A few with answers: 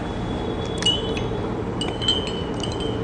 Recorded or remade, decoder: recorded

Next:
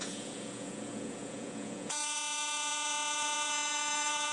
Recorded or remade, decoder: remade, vocoder, Vocos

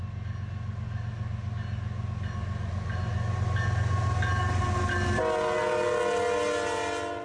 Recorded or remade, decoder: recorded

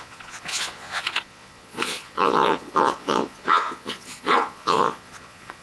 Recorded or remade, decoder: remade, vocoder, Vocos